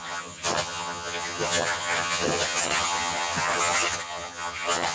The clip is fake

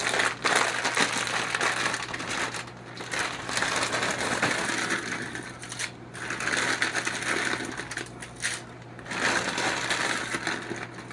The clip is real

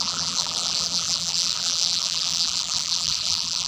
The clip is fake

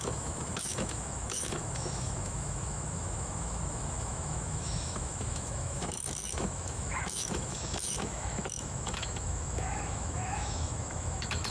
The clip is fake